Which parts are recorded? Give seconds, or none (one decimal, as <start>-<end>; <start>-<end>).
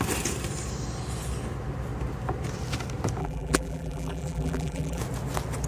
0.0-3.2; 5.0-5.7